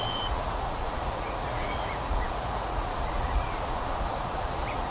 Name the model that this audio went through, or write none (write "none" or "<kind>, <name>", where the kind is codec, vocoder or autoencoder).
vocoder, Vocos